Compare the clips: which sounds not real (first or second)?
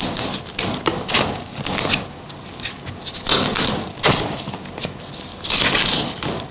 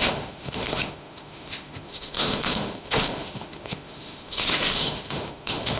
second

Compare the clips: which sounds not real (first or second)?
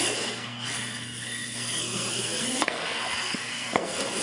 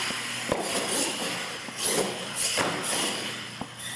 first